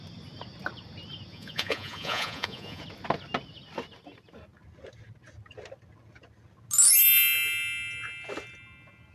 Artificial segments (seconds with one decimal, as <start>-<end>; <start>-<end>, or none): 1.3-2.8